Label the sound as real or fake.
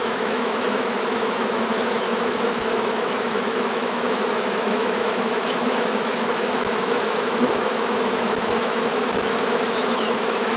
fake